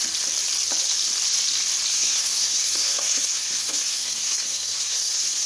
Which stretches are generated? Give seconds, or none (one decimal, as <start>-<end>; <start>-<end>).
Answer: 1.9-5.5